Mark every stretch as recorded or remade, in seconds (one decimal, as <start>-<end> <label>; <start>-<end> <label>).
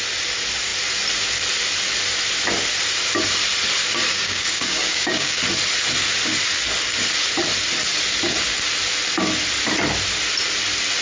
0.0-4.1 recorded; 4.1-5.4 remade; 5.4-11.0 recorded